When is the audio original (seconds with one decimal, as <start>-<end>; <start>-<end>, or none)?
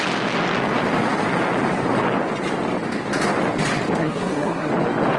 0.0-4.0; 4.7-5.2